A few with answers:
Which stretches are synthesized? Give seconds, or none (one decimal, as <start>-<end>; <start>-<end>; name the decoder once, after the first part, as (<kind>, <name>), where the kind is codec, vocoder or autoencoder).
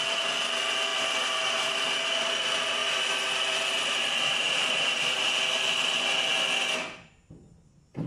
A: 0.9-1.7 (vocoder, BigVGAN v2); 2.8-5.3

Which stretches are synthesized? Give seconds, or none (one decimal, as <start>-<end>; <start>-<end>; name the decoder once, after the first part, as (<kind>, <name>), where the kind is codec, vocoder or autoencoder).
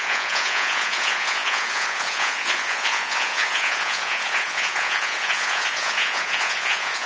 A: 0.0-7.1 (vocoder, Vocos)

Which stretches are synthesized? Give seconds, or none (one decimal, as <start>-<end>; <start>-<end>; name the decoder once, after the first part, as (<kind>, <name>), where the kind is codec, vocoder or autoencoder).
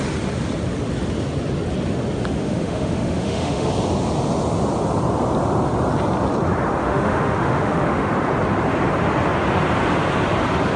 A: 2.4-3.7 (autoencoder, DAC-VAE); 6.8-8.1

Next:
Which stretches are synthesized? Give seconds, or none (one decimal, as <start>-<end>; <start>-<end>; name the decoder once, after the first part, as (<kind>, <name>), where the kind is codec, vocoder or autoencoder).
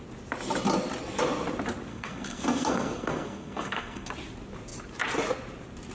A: 1.9-4.1 (codec, SNAC)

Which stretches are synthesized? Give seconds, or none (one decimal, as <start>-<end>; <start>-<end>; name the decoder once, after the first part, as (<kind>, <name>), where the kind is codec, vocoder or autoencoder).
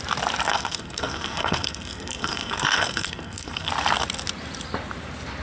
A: 0.5-3.7 (codec, SNAC)